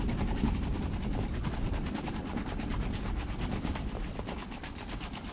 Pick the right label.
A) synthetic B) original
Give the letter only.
B